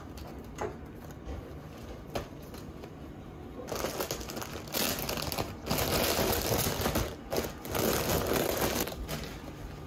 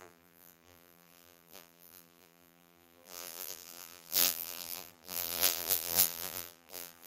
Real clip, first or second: first